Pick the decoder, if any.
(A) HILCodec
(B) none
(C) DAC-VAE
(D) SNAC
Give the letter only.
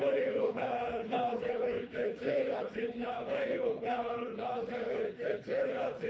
A